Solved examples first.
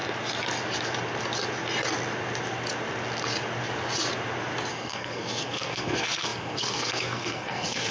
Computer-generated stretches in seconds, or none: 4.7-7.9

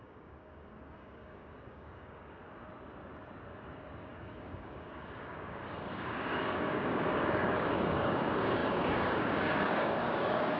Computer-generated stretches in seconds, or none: 0.0-2.4; 4.0-10.6

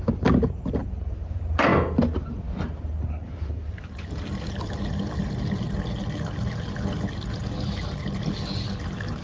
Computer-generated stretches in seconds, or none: none